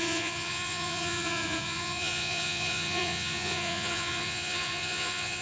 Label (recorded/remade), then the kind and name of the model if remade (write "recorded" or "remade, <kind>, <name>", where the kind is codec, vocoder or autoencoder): remade, vocoder, Vocos